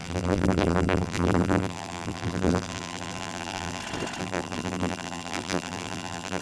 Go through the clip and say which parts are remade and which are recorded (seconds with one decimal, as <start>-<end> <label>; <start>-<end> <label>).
0.0-3.8 remade; 3.8-4.2 recorded; 4.2-6.4 remade